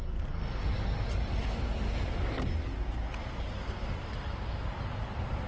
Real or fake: real